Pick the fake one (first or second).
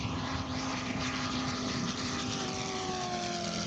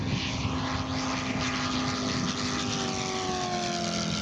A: first